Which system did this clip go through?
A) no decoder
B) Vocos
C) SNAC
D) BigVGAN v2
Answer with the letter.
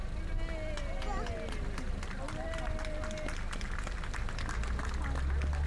A